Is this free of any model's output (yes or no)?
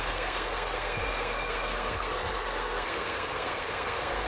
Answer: no